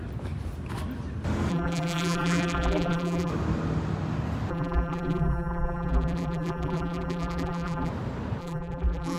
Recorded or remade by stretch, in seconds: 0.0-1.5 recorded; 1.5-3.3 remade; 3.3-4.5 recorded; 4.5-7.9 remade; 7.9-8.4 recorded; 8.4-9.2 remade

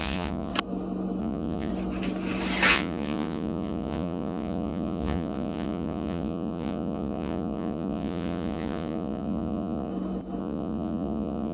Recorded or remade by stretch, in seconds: 0.0-0.5 remade; 0.5-1.2 recorded; 1.2-1.7 remade; 1.7-2.7 recorded; 2.7-9.9 remade; 9.9-10.4 recorded; 10.4-11.5 remade

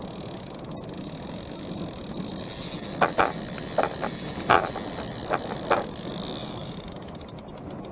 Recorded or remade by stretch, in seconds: 0.0-6.4 recorded; 6.4-7.5 remade; 7.5-7.9 recorded

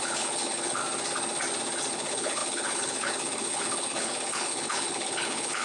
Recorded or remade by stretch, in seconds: 0.0-0.8 remade; 0.8-1.9 recorded; 1.9-5.6 remade

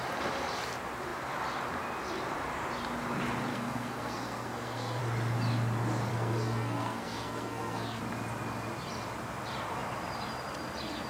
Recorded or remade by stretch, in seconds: 0.0-3.5 recorded; 3.5-5.0 remade; 5.0-6.1 recorded; 6.1-8.0 remade; 8.0-11.1 recorded

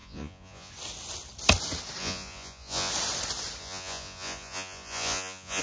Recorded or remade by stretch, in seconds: 0.0-0.7 remade; 0.7-2.0 recorded; 2.0-2.9 remade; 2.9-3.6 recorded; 3.6-5.6 remade